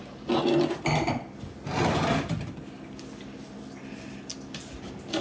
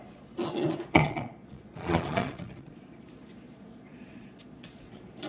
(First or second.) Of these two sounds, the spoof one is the second